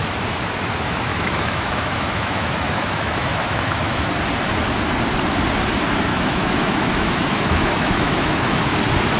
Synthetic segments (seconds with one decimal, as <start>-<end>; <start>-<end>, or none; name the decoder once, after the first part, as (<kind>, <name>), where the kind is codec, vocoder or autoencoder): 1.1-4.1 (autoencoder, DAC-VAE); 6.1-8.7